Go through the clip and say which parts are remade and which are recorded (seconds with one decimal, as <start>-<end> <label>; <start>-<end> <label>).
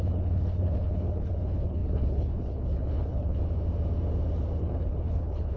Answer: 0.0-3.4 remade; 3.4-4.6 recorded; 4.6-5.6 remade